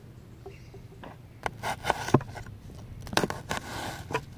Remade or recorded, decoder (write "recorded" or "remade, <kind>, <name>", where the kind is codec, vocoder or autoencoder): recorded